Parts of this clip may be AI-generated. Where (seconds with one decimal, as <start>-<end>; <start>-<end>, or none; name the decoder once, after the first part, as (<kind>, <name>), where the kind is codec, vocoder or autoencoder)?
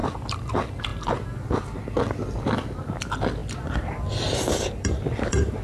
0.0-0.5 (vocoder, BigVGAN v2); 0.9-1.8; 3.4-5.6